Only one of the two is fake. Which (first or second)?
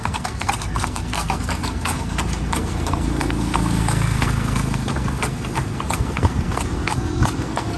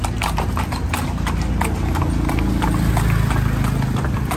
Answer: first